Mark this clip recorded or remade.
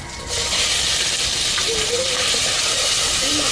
recorded